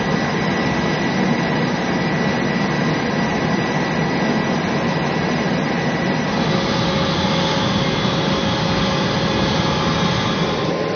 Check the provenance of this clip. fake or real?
real